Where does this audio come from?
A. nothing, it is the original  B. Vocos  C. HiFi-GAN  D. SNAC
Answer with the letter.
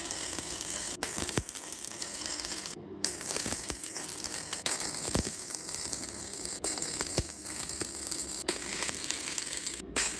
D